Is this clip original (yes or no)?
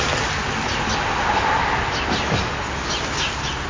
yes